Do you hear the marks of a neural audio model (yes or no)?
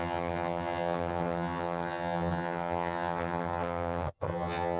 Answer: yes